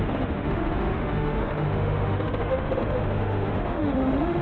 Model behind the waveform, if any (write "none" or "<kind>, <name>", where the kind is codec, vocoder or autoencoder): autoencoder, DAC-VAE